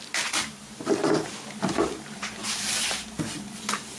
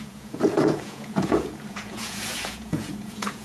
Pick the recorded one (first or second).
first